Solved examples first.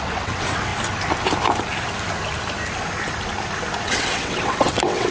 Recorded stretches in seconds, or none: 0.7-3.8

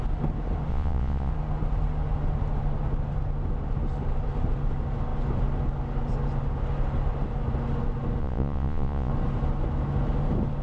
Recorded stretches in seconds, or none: 0.0-0.7; 1.3-8.2; 9.1-10.6

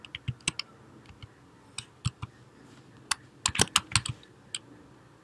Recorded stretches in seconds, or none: 0.0-5.2

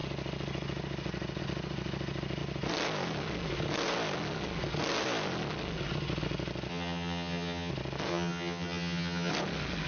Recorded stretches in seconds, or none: 0.0-6.7; 7.7-8.1; 9.3-9.9

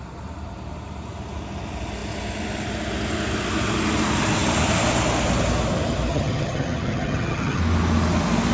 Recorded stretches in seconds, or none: 0.0-6.1; 7.6-8.5

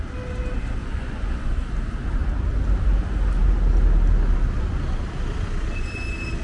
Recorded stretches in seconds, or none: 0.0-0.8; 1.5-6.4